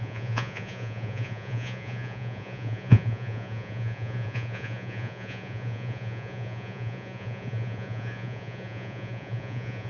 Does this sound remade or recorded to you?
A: remade